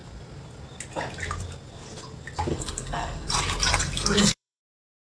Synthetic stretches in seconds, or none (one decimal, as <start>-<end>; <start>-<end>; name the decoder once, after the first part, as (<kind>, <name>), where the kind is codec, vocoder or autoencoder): 2.5-3.3 (codec, SNAC); 3.7-4.6